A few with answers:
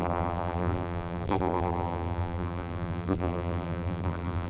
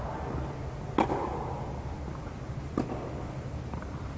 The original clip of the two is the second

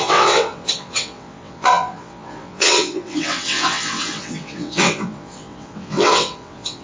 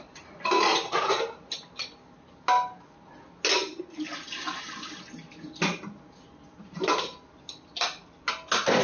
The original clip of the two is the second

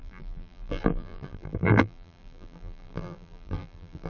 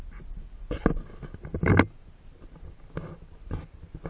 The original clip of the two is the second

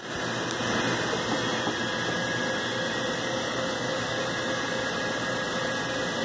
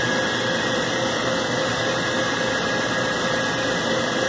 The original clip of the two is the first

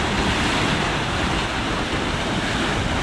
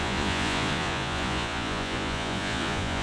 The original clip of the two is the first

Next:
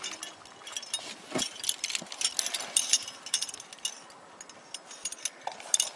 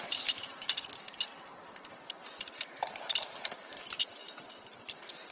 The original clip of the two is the first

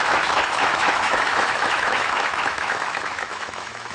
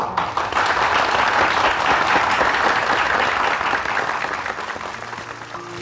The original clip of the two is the second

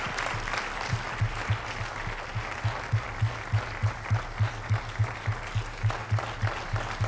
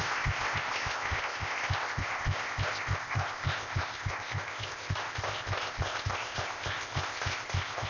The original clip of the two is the first